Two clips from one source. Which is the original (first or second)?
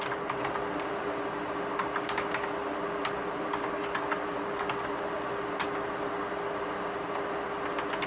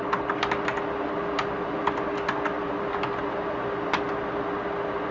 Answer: second